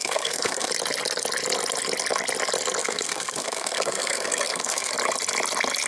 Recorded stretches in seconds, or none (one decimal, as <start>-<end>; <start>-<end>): 0.7-2.8; 4.9-5.9